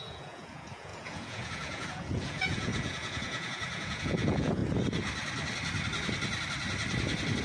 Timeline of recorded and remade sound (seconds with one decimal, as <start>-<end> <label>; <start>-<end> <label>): 0.0-4.6 remade; 4.6-7.4 recorded